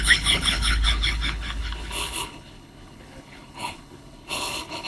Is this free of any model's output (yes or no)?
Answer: no